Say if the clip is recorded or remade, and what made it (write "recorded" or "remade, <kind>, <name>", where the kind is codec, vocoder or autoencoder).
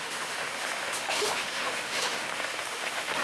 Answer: remade, autoencoder, DAC-VAE